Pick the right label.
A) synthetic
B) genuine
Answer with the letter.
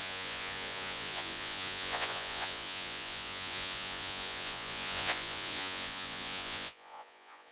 A